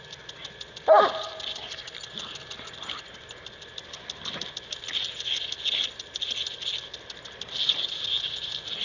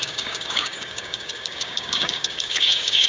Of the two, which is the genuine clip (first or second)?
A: first